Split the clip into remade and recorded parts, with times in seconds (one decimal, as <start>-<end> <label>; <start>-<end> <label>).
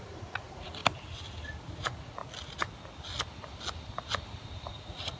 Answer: 0.0-0.8 remade; 0.8-1.8 recorded; 1.8-2.2 remade; 2.2-4.7 recorded; 4.7-5.2 remade